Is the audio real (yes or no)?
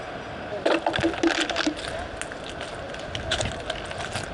yes